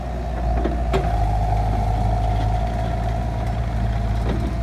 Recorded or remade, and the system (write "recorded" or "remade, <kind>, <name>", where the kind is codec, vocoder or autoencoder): recorded